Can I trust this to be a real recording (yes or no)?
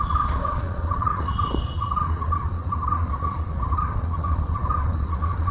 no